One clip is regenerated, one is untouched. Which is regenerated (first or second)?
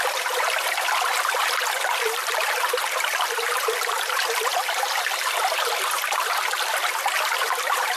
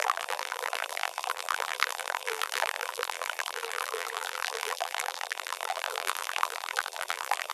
second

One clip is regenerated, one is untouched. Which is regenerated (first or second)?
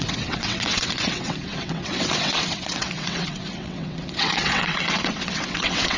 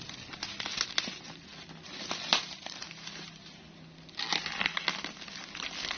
first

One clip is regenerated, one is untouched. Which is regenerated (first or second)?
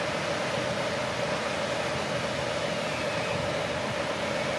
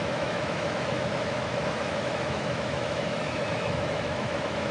second